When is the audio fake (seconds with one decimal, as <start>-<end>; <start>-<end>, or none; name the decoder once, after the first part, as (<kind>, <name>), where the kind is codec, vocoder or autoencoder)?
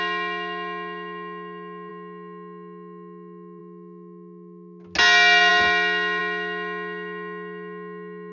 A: none